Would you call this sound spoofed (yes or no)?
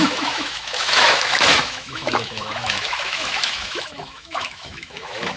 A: yes